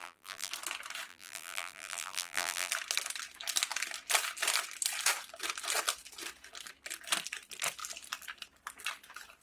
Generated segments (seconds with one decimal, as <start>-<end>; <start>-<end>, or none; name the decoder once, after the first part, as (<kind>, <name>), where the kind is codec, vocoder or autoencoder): 0.0-0.5 (vocoder, BigVGAN v2); 1.1-2.7